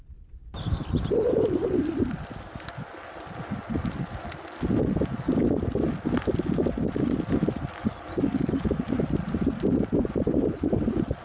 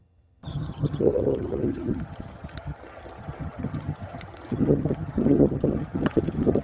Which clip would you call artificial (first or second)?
second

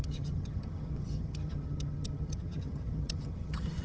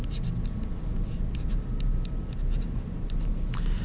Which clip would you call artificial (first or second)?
first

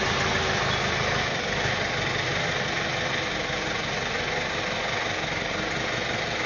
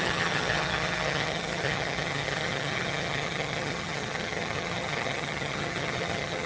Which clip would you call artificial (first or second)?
second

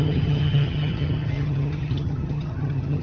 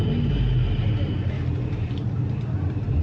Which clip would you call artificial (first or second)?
first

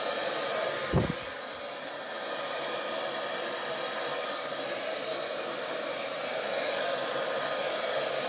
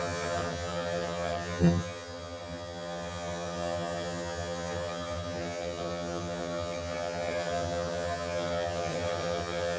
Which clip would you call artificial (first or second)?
second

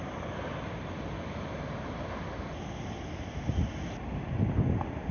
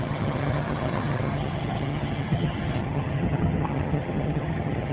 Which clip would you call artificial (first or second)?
second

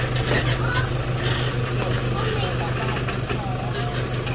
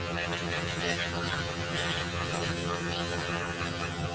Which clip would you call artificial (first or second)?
second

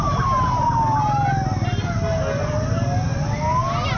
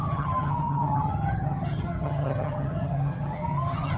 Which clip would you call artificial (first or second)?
second